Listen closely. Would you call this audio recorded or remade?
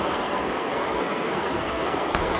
remade